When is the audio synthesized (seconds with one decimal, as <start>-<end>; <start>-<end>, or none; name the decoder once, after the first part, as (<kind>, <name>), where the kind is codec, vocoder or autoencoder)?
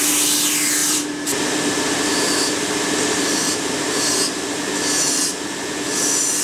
0.8-4.6 (vocoder, BigVGAN v2)